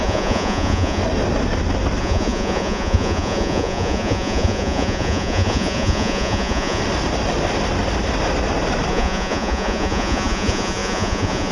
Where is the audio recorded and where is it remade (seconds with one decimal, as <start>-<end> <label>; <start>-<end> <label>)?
0.0-1.0 remade; 1.0-2.0 recorded; 2.0-6.8 remade; 6.8-8.9 recorded; 8.9-11.5 remade